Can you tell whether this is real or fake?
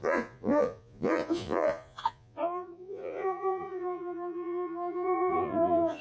fake